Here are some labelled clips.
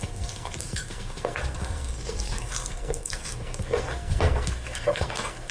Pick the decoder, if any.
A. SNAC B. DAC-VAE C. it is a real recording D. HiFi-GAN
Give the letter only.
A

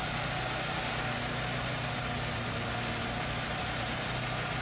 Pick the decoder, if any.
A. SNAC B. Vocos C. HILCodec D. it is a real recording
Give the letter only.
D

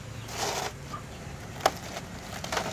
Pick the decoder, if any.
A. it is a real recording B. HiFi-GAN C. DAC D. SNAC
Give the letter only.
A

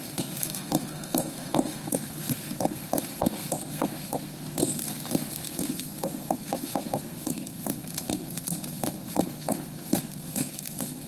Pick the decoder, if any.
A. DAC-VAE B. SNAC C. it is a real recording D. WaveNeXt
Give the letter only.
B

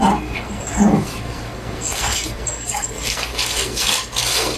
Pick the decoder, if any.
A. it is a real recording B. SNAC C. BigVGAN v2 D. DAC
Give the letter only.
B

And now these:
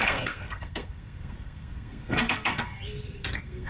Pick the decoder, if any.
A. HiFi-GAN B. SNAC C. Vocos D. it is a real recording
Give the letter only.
B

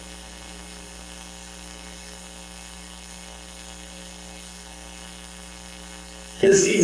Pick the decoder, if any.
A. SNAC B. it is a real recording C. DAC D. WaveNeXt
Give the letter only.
A